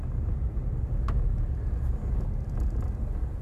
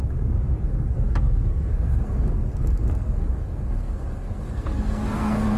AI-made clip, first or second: second